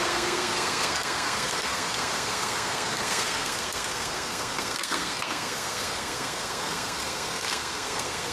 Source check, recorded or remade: remade